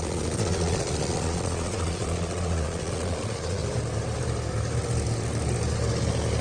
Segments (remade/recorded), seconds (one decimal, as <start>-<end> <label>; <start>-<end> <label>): 0.0-3.6 remade; 3.6-6.4 recorded